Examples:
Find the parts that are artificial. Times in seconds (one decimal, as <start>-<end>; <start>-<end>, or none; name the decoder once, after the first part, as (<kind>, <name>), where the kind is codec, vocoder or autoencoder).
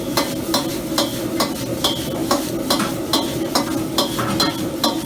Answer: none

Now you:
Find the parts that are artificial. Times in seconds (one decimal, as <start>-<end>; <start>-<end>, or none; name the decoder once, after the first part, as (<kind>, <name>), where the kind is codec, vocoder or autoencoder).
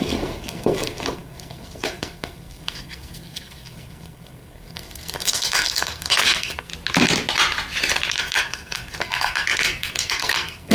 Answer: 0.0-6.7 (codec, SNAC); 8.1-10.7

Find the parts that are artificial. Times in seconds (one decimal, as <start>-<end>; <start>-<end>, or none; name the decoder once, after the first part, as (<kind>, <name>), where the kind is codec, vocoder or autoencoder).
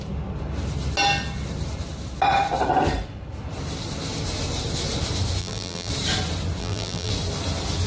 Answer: 5.4-5.9 (vocoder, BigVGAN v2); 6.6-7.1